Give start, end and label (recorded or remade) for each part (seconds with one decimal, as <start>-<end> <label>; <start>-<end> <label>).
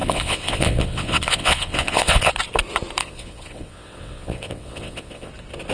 0.0-2.3 remade; 2.3-3.0 recorded; 3.0-5.3 remade; 5.3-5.7 recorded